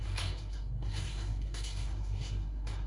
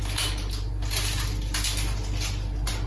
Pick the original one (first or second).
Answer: second